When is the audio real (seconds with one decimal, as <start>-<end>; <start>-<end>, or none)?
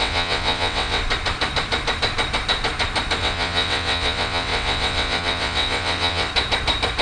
1.0-3.2; 6.3-7.0